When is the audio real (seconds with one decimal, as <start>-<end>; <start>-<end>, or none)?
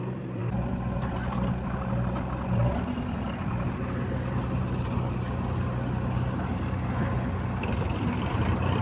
0.0-8.8